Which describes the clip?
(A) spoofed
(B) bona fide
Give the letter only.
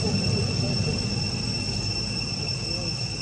B